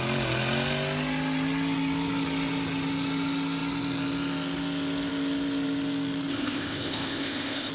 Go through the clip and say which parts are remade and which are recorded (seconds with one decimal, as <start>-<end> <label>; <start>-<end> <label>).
0.0-6.3 recorded; 6.3-7.7 remade